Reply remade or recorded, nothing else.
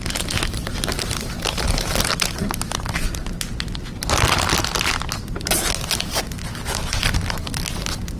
recorded